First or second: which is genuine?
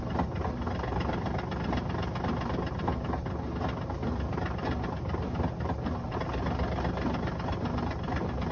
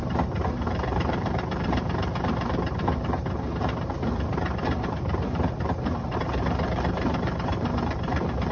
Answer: first